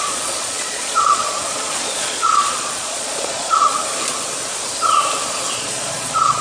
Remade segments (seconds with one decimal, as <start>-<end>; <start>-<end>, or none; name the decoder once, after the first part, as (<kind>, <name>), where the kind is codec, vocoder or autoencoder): 0.0-3.7 (vocoder, Vocos); 5.5-6.4